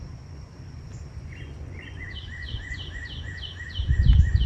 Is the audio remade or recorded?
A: remade